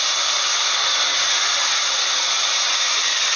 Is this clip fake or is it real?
real